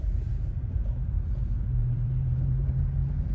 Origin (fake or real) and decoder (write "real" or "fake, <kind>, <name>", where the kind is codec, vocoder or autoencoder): fake, vocoder, BigVGAN v2